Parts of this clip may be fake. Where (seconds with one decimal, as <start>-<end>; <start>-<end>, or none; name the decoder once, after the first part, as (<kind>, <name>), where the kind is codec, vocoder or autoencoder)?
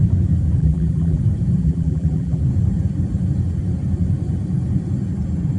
0.6-1.2 (vocoder, BigVGAN v2); 1.6-2.4